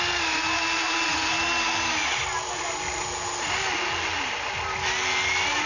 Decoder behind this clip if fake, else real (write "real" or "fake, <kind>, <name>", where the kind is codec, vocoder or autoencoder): real